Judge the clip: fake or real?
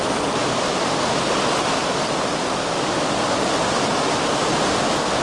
real